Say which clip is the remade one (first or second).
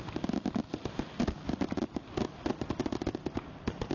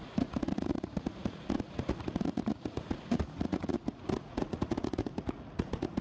second